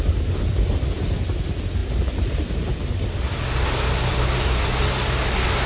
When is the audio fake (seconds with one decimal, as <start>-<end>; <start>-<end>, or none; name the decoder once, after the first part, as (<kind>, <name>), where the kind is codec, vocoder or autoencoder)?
none